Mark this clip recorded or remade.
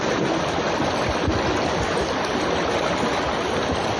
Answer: recorded